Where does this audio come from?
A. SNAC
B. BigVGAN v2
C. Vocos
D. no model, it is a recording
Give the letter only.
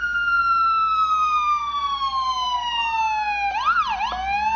D